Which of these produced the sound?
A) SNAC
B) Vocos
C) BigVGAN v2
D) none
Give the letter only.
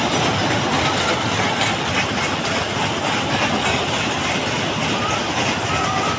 D